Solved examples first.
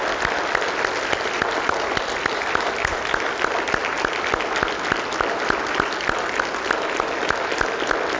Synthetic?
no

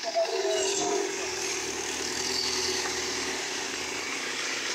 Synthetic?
yes